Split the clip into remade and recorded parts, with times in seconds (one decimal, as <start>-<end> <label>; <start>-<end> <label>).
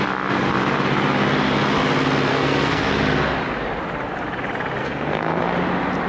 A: 0.0-2.3 recorded; 2.3-2.9 remade; 2.9-4.8 recorded; 4.8-5.4 remade; 5.4-6.1 recorded